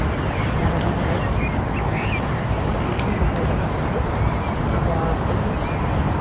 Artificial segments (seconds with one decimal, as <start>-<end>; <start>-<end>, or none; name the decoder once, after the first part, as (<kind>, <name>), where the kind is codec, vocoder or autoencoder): none